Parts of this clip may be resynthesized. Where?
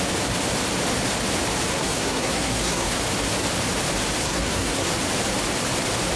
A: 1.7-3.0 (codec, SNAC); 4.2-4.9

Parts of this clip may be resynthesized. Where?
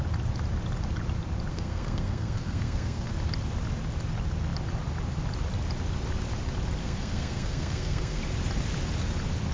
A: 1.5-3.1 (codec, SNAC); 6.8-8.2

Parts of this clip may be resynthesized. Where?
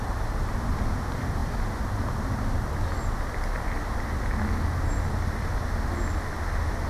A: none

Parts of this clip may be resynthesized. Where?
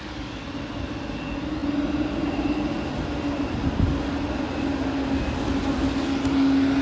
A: none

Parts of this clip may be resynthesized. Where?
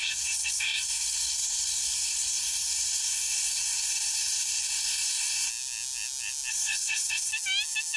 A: 0.0-5.5 (codec, SNAC); 6.5-7.3